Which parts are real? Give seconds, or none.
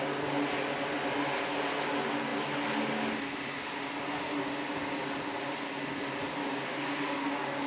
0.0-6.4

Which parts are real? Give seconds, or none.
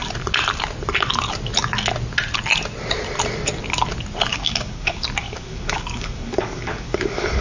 0.0-4.3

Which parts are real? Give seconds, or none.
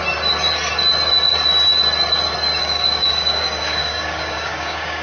0.0-2.6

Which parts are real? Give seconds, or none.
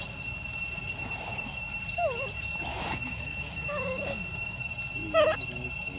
0.0-1.3; 1.8-2.7; 4.6-6.0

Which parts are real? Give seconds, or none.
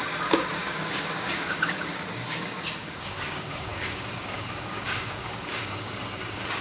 none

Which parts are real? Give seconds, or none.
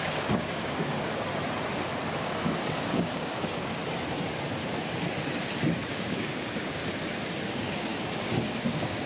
1.3-2.2; 3.8-5.9; 6.8-7.5